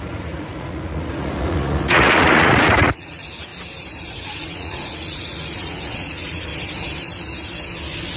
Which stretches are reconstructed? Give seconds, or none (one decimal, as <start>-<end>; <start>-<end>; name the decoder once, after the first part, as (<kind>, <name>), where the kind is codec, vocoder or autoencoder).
0.0-3.5 (vocoder, Vocos); 4.1-6.5